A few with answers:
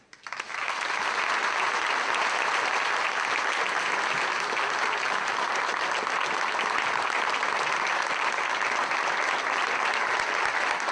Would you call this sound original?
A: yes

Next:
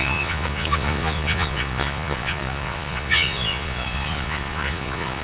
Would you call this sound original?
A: no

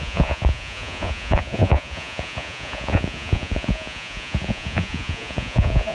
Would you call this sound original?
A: no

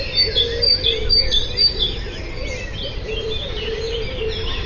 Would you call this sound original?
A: yes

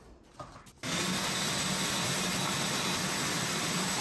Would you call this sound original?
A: yes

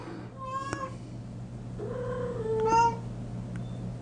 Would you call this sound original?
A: yes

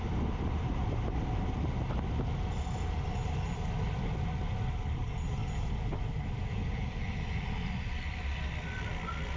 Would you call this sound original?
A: yes